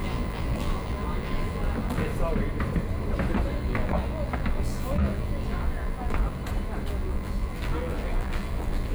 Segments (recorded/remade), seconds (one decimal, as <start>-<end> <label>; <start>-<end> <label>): 0.0-2.1 remade; 2.1-3.5 recorded; 3.5-6.4 remade; 6.4-6.9 recorded; 6.9-8.9 remade